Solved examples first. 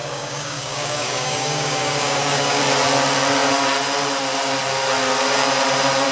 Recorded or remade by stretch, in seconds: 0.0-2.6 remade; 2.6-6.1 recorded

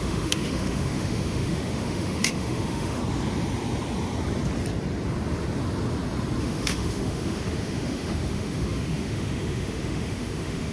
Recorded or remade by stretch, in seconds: 0.0-3.0 remade; 3.0-6.4 recorded; 6.4-10.7 remade

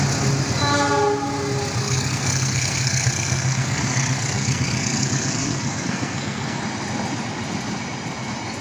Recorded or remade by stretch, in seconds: 0.0-1.8 recorded; 1.8-6.6 remade; 6.6-8.6 recorded

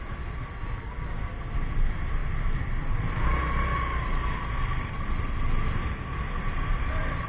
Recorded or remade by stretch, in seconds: 0.0-7.3 recorded

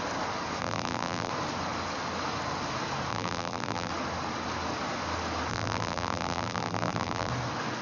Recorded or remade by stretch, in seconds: 0.0-0.6 recorded; 0.6-1.3 remade; 1.3-3.1 recorded; 3.1-3.9 remade; 3.9-5.5 recorded; 5.5-7.3 remade; 7.3-7.8 recorded

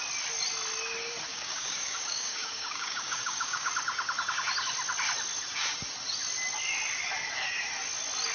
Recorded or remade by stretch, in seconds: 0.0-1.3 recorded; 1.3-3.7 remade; 3.7-8.3 recorded

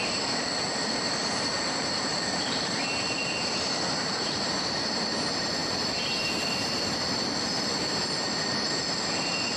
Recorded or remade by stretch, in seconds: 0.0-9.6 remade